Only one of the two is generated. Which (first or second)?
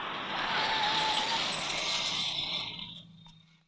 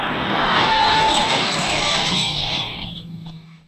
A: second